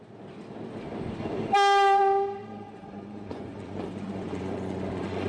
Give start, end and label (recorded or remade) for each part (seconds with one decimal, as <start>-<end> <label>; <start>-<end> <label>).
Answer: 0.0-2.4 recorded; 2.4-5.3 remade